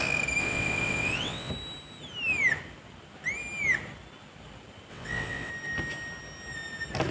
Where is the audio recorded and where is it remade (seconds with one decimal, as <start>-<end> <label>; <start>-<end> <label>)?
0.0-0.4 recorded; 0.4-1.5 remade; 1.5-4.9 recorded; 4.9-5.5 remade; 5.5-7.1 recorded